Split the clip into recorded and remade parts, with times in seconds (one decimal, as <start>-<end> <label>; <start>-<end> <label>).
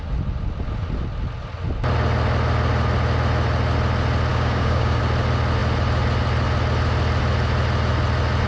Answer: 0.0-4.3 recorded; 4.3-5.0 remade; 5.0-8.5 recorded